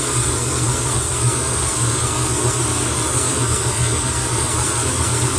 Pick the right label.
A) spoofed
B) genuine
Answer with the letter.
A